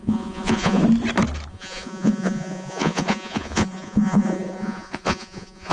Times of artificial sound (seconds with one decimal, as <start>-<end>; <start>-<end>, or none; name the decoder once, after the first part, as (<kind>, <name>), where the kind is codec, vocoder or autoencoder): 0.0-0.8 (vocoder, Vocos); 1.5-5.7